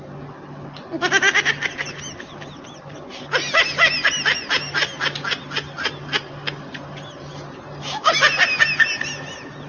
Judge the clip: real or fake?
real